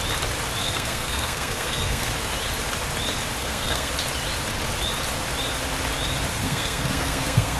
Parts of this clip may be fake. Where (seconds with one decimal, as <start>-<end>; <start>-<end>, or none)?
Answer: 0.6-2.1; 3.4-3.9; 6.3-7.6

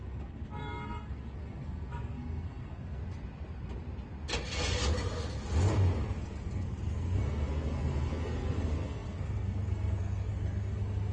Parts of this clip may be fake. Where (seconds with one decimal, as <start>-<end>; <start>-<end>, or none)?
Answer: 0.0-3.0; 6.2-11.1

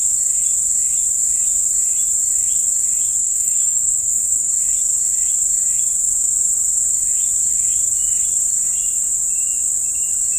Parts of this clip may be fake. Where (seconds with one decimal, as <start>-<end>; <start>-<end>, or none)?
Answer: 3.2-4.5

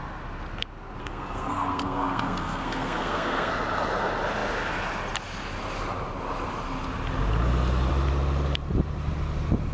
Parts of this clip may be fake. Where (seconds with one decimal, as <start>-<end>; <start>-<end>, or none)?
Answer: 1.0-3.5

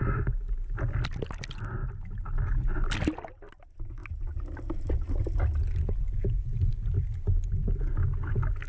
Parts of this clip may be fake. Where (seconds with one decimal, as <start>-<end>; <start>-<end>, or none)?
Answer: none

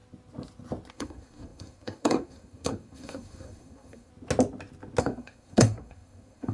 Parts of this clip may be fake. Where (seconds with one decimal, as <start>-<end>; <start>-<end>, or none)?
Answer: 0.9-4.1; 5.0-6.5

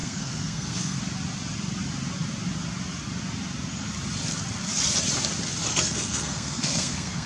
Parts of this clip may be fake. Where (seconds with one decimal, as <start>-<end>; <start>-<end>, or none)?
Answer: 0.0-1.0; 5.7-7.3